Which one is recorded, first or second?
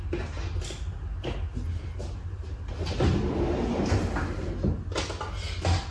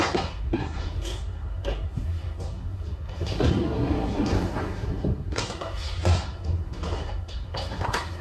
first